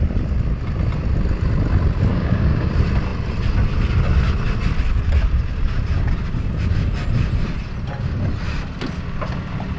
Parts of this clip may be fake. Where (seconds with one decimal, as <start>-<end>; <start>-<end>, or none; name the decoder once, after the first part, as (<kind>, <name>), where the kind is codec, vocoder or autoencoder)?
2.1-2.7 (codec, DAC)